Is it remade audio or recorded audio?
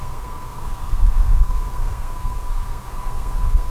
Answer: remade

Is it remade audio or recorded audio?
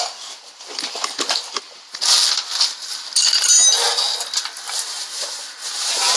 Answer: recorded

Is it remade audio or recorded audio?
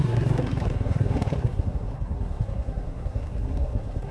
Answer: remade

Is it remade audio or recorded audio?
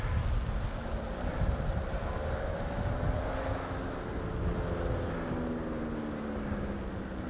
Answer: recorded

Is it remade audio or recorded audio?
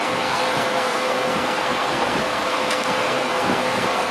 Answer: remade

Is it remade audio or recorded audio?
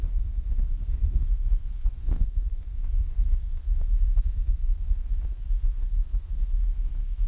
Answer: remade